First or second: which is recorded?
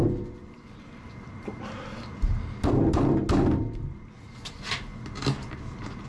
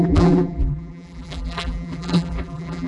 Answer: first